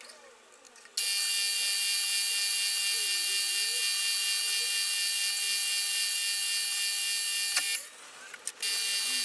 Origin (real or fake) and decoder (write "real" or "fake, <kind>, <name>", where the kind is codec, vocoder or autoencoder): real